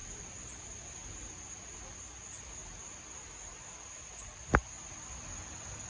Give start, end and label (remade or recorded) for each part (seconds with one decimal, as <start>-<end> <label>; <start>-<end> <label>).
0.0-5.9 recorded